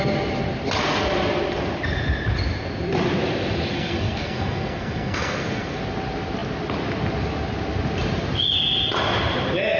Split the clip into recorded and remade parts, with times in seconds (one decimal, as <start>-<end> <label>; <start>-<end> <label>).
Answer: 0.0-3.7 recorded; 3.7-5.8 remade; 5.8-9.8 recorded